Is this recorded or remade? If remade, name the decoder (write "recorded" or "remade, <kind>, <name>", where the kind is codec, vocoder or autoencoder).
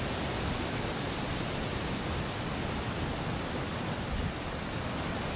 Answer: recorded